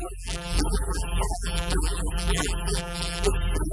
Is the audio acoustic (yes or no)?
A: no